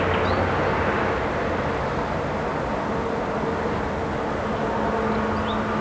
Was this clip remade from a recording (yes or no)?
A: no